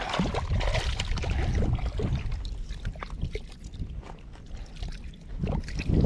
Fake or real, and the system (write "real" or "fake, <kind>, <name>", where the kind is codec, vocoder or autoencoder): real